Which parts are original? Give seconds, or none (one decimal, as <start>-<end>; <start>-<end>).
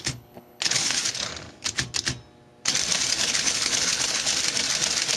1.3-3.1; 4.3-5.2